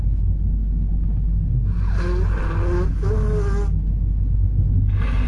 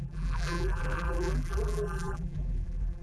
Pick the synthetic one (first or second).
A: second